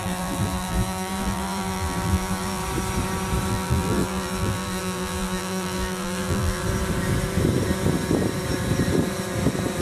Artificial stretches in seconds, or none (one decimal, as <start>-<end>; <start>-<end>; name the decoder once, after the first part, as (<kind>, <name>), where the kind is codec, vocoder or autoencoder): 0.0-2.6 (vocoder, BigVGAN v2); 3.5-6.6